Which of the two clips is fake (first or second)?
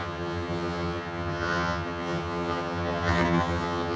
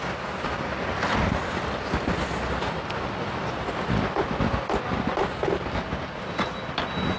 first